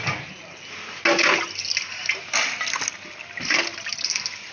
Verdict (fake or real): real